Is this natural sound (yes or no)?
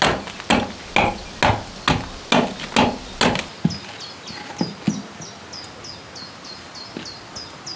yes